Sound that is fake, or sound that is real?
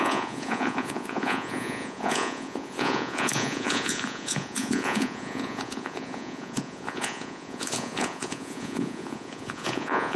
fake